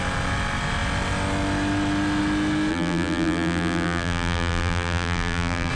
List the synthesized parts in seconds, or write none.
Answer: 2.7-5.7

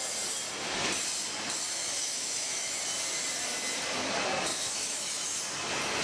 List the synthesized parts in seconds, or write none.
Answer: 1.7-2.7; 4.5-5.4

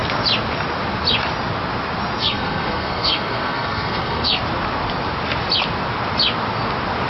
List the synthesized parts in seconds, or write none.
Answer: 2.2-4.4

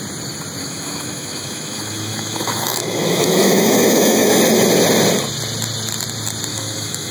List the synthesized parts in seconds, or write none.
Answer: 0.6-4.4; 6.5-7.1

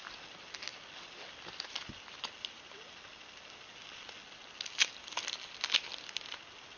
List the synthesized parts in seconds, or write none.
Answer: none

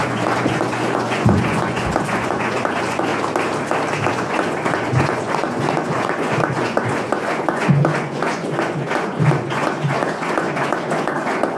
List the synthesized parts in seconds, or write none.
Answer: 0.0-3.1; 4.1-11.6

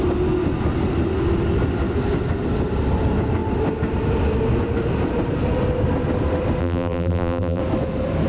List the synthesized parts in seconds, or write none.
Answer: 6.6-7.6

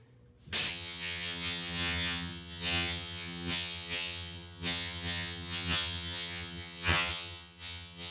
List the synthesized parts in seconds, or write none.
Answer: 0.7-8.1